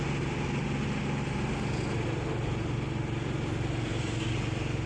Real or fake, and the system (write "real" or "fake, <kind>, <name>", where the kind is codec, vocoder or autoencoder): real